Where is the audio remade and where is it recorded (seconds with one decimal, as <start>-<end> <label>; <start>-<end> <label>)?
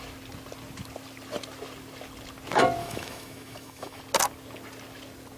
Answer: 0.0-2.8 recorded; 2.8-4.0 remade; 4.0-5.4 recorded